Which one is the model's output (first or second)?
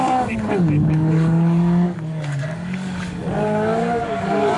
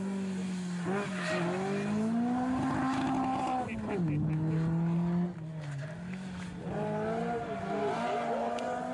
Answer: first